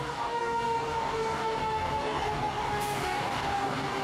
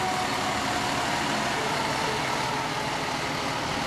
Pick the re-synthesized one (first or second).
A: first